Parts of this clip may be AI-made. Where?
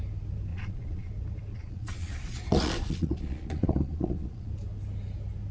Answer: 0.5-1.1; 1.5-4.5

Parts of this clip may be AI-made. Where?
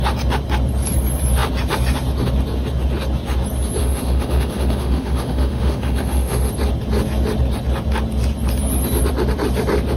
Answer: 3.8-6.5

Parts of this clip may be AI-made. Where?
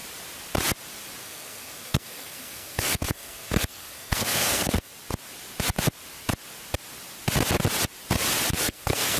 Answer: 1.2-4.9; 8.6-9.2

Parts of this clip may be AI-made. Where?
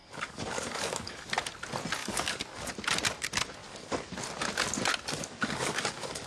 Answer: 0.0-1.3; 2.0-2.7; 3.6-4.1; 5.1-6.3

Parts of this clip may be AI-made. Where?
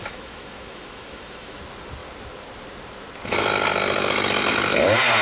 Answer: 0.0-1.6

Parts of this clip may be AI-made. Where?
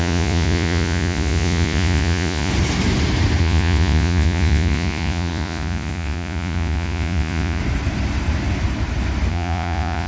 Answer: 0.0-2.5; 3.4-7.6; 9.3-10.1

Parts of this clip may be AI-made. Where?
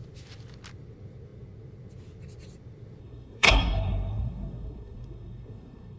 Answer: 3.0-6.0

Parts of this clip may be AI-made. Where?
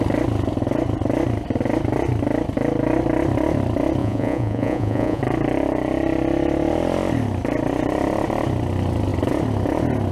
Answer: 4.0-5.2